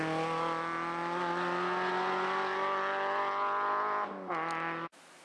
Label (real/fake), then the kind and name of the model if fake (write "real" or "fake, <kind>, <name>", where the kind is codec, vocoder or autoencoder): real